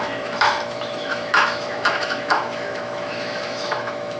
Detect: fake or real fake